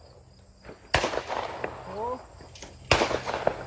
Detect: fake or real real